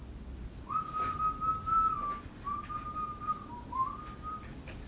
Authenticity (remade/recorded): recorded